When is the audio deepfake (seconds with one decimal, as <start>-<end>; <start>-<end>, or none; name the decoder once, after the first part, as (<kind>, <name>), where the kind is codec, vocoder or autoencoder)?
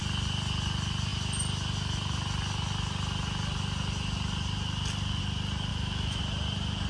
5.7-6.2 (autoencoder, DAC-VAE)